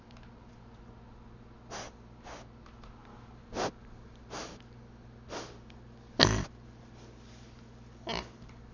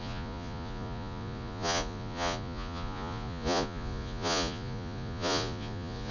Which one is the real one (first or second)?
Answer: first